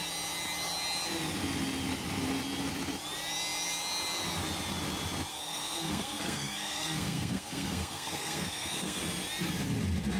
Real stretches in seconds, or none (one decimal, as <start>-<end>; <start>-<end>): 0.0-5.3; 9.0-10.2

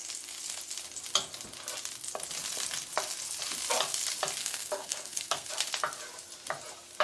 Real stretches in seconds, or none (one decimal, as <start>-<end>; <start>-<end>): 0.0-4.4; 5.5-7.0